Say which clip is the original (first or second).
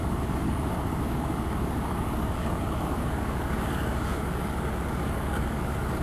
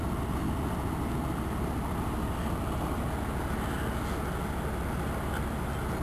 second